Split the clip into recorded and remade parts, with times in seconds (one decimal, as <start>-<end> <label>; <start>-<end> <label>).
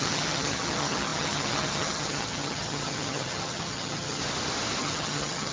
0.0-4.2 remade; 4.2-4.8 recorded; 4.8-5.5 remade